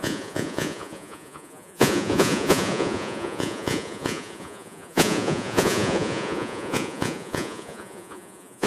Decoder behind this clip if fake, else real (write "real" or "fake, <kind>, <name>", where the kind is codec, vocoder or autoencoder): fake, vocoder, Vocos